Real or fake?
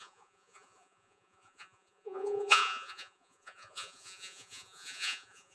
fake